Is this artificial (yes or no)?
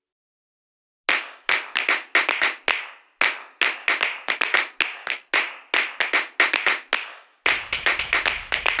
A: no